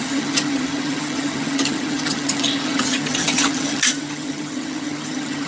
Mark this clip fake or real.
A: fake